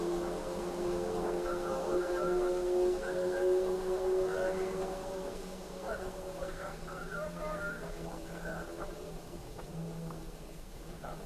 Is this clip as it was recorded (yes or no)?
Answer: no